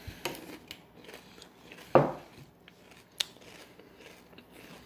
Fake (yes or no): no